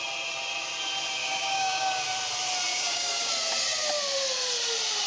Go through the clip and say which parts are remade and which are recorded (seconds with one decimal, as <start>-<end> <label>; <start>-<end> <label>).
0.0-1.2 recorded; 1.2-2.0 remade; 2.0-2.7 recorded; 2.7-3.3 remade; 3.3-5.1 recorded